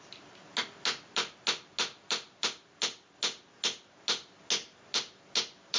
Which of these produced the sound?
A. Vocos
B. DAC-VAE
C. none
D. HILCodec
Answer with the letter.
C